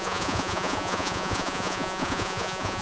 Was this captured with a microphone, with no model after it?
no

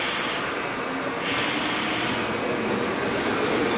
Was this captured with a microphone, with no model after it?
yes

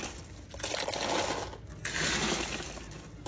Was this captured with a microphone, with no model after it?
yes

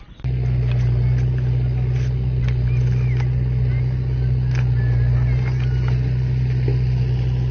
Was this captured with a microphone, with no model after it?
yes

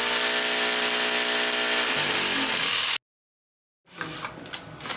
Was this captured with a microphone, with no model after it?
yes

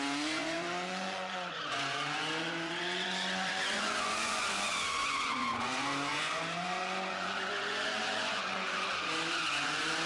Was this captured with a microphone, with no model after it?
no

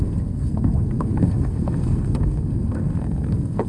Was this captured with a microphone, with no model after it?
no